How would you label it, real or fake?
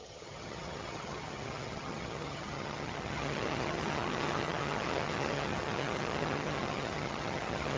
fake